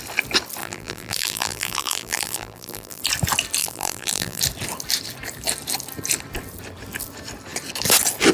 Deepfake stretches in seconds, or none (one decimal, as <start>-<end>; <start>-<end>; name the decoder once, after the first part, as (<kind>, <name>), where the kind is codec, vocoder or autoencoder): 0.6-3.0 (vocoder, BigVGAN v2); 3.6-4.4